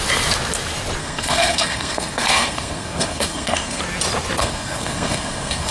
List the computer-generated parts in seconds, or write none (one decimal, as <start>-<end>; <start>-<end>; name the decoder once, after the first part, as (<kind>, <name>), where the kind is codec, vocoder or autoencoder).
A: 1.0-3.8 (codec, SNAC); 4.4-5.7